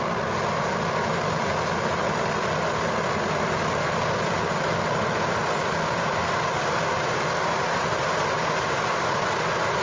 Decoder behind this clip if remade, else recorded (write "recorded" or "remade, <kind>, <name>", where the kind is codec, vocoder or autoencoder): recorded